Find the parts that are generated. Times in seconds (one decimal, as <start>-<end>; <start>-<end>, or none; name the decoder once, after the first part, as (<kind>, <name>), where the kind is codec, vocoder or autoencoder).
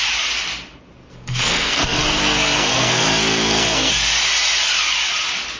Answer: 1.0-3.9 (codec, SNAC)